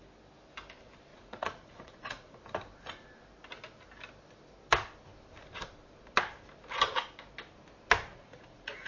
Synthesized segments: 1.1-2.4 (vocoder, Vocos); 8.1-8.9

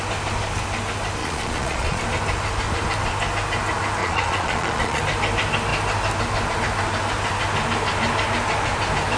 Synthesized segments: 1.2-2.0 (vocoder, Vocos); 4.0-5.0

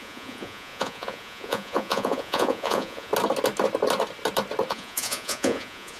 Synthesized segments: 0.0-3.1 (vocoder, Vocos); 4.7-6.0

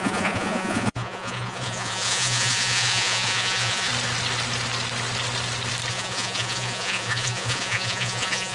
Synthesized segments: 0.0-3.9 (vocoder, Vocos); 5.9-8.5